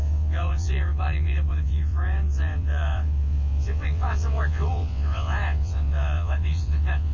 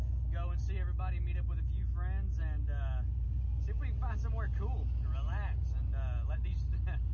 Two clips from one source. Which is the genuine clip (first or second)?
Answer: second